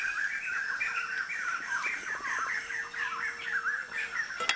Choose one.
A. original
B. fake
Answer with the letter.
A